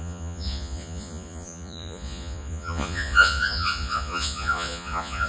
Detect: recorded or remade remade